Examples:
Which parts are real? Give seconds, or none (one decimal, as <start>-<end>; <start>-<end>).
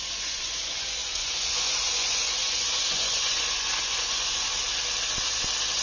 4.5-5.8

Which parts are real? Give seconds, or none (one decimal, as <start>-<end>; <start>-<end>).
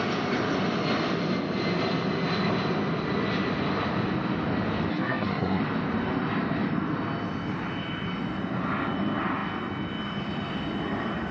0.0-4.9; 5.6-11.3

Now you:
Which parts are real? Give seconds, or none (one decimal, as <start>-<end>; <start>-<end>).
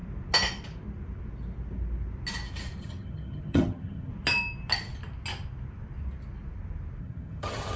0.0-2.8; 4.1-7.0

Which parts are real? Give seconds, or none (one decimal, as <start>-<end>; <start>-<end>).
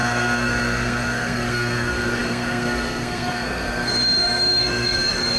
none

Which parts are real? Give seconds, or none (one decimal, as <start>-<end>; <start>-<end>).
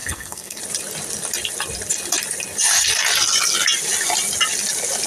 0.6-5.1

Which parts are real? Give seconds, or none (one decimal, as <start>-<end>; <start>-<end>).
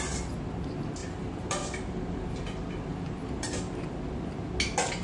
0.0-1.0; 3.9-5.0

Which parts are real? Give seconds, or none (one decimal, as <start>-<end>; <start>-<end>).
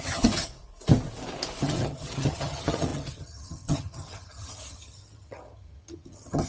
0.5-1.6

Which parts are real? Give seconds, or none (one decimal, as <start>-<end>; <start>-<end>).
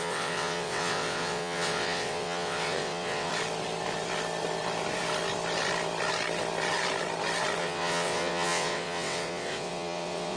3.3-7.6